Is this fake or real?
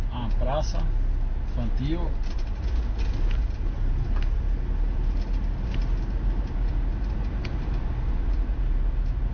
real